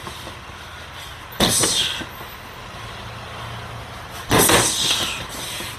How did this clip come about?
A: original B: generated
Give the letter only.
A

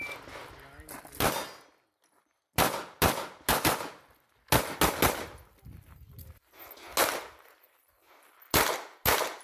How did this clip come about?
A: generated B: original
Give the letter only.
B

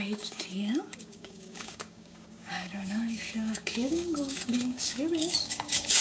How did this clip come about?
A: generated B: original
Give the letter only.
A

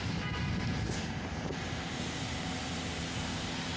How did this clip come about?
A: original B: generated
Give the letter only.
A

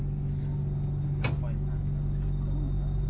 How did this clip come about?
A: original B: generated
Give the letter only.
A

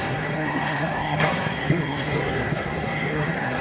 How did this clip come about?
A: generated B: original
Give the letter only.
A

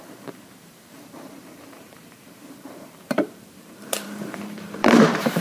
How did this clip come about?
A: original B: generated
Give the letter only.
B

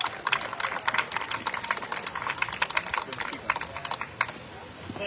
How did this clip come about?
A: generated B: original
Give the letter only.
B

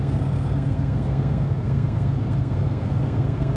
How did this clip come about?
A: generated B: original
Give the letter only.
A